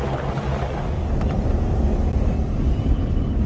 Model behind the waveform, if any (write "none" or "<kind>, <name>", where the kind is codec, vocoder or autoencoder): none